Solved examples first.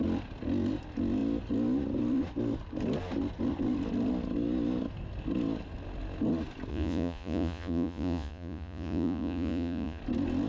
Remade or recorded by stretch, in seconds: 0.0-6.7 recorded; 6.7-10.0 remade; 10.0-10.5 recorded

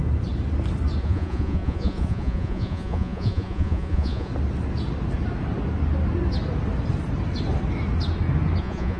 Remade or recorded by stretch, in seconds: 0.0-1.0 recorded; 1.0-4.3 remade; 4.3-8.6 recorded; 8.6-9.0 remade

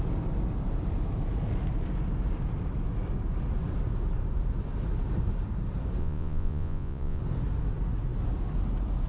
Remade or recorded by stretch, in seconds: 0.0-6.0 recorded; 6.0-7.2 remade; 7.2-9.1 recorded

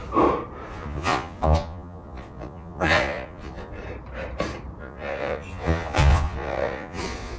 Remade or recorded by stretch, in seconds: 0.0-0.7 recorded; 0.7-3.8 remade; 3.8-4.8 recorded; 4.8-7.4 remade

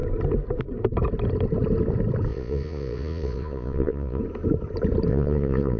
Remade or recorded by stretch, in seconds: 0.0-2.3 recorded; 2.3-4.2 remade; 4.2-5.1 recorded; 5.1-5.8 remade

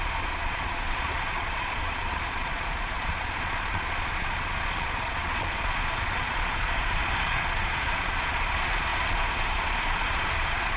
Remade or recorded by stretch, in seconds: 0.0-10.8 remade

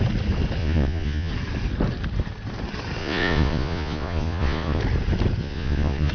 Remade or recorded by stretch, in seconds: 0.0-0.6 recorded; 0.6-1.3 remade; 1.3-3.0 recorded; 3.0-4.8 remade; 4.8-5.4 recorded; 5.4-6.1 remade

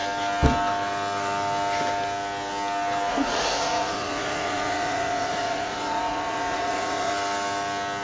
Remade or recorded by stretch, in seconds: 0.0-3.1 recorded; 3.1-7.1 remade; 7.1-8.0 recorded